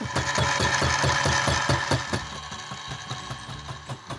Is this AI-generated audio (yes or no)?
no